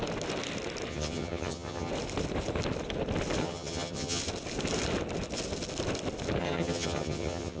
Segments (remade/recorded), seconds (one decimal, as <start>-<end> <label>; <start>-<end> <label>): 0.0-0.9 recorded; 0.9-1.9 remade; 1.9-3.4 recorded; 3.4-4.2 remade; 4.2-6.4 recorded; 6.4-7.6 remade